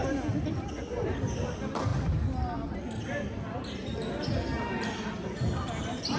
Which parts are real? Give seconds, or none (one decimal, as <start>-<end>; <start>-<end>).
0.0-6.2